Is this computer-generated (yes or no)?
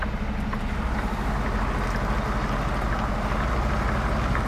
no